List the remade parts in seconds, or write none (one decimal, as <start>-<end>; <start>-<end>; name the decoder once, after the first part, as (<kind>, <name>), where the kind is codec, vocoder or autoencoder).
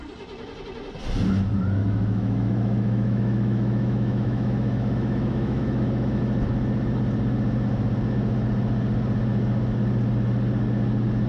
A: 1.8-6.2 (autoencoder, DAC-VAE)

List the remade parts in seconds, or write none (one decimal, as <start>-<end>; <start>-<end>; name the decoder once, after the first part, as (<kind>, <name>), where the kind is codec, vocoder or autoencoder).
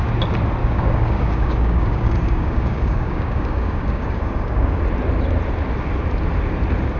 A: 0.6-4.8 (codec, DAC)